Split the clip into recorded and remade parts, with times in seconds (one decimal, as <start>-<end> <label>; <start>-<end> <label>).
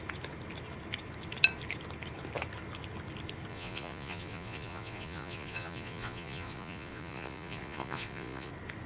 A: 0.0-3.5 recorded; 3.5-8.5 remade; 8.5-8.9 recorded